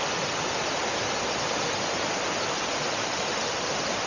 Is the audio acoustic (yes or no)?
yes